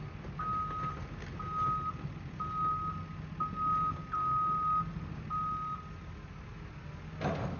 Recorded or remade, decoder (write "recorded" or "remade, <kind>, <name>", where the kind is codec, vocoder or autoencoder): recorded